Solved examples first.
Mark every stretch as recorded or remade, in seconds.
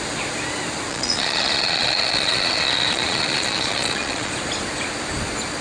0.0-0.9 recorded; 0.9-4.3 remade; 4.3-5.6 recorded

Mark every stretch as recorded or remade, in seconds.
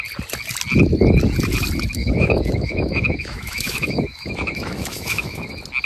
0.0-2.0 recorded; 2.0-5.5 remade; 5.5-5.9 recorded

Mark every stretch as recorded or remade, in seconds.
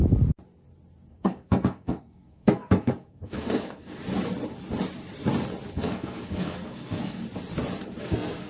0.0-1.1 recorded; 1.1-4.0 remade; 4.0-5.7 recorded; 5.7-7.2 remade; 7.2-8.0 recorded; 8.0-8.5 remade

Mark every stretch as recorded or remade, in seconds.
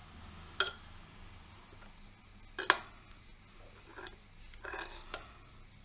0.0-5.8 recorded